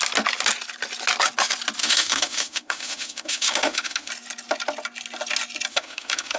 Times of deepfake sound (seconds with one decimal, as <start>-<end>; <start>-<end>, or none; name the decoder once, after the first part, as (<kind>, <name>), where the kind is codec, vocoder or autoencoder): 1.8-4.1 (autoencoder, DAC-VAE); 5.7-6.4